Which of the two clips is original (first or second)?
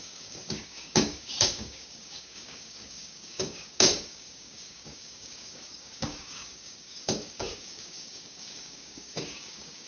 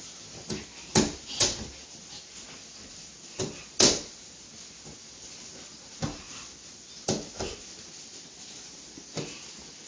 second